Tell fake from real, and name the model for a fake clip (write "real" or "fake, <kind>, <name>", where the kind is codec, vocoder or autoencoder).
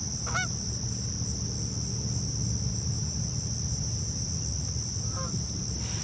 real